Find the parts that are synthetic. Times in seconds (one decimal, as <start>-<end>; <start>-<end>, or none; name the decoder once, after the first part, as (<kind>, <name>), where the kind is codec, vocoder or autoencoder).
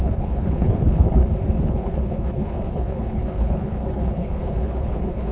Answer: 0.0-1.2 (codec, HILCodec); 1.7-5.3